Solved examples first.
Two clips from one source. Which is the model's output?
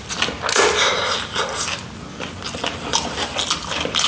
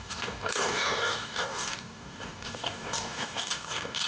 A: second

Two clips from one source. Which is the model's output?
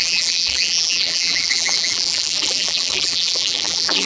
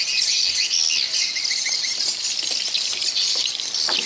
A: first